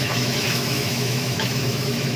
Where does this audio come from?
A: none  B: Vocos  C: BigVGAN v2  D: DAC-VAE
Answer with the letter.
D